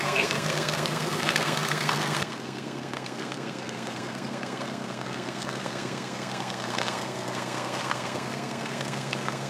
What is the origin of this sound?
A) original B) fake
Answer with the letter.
B